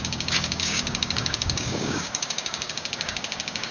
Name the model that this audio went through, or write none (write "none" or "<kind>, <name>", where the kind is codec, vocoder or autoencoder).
codec, DAC